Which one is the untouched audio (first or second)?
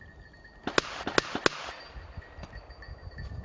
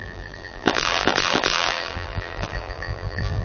first